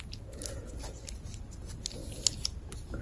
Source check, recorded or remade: recorded